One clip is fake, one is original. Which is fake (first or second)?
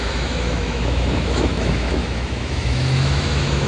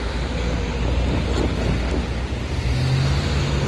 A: first